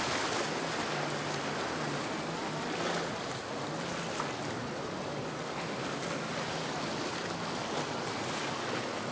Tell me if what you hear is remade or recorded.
recorded